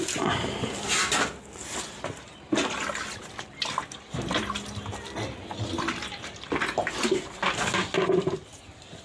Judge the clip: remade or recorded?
recorded